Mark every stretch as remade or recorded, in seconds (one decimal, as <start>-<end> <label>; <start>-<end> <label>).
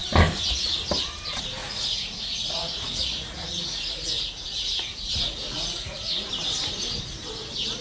0.0-1.6 recorded; 1.6-6.3 remade; 6.3-7.8 recorded